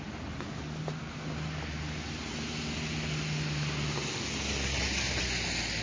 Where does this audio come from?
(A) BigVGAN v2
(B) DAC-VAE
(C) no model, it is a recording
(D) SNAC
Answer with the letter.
C